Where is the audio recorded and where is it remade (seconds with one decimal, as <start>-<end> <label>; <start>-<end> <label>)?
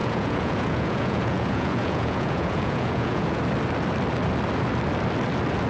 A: 0.0-3.4 remade; 3.4-5.7 recorded